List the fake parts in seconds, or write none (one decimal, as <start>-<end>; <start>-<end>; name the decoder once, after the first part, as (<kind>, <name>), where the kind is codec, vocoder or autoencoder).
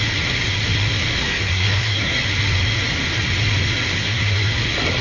1.2-2.2 (codec, SNAC); 4.0-4.5